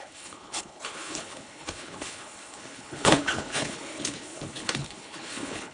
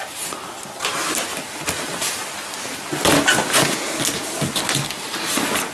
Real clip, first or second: second